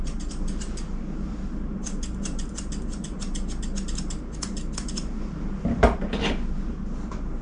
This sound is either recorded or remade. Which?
recorded